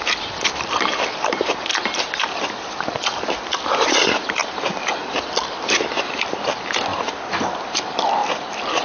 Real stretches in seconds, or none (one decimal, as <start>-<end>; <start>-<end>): 1.7-2.8; 6.9-7.7; 8.2-8.8